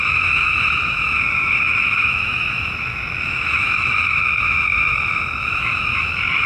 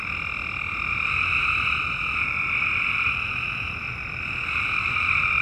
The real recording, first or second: second